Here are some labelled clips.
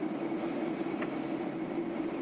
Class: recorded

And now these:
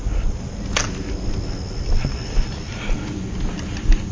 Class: recorded